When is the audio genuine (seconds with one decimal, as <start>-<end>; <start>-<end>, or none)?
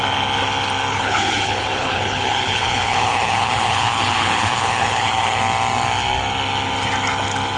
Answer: 0.0-0.9; 5.4-7.6